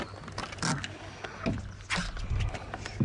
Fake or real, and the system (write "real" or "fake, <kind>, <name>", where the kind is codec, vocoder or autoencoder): real